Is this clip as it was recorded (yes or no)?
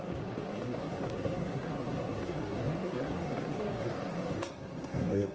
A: no